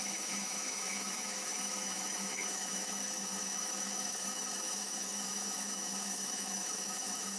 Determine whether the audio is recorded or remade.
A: remade